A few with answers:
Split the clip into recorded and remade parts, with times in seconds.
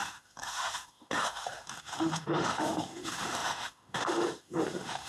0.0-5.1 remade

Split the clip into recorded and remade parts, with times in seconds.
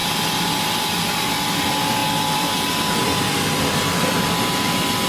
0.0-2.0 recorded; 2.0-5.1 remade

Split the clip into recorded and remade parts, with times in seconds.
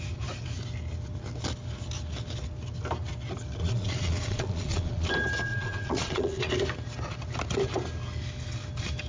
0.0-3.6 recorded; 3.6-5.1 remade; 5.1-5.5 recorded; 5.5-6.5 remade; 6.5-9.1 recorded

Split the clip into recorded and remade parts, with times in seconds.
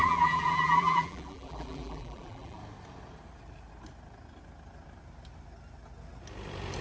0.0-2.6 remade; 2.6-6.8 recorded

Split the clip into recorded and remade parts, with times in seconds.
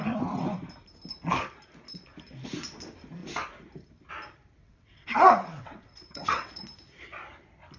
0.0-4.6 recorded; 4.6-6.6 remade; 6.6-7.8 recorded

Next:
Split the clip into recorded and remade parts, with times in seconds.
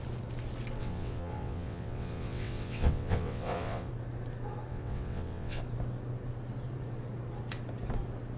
0.0-0.8 recorded; 0.8-3.9 remade; 3.9-4.7 recorded; 4.7-5.6 remade; 5.6-8.4 recorded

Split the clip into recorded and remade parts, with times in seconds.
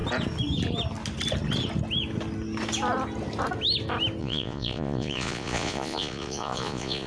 0.0-4.2 recorded; 4.2-7.1 remade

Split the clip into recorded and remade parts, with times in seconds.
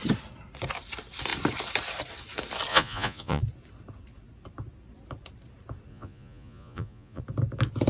0.0-2.7 recorded; 2.7-3.4 remade; 3.4-5.9 recorded; 5.9-7.2 remade; 7.2-7.9 recorded